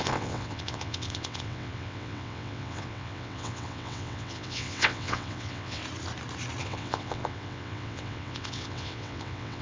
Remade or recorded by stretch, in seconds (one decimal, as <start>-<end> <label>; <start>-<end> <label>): 0.0-5.8 remade; 5.8-6.6 recorded; 6.6-9.6 remade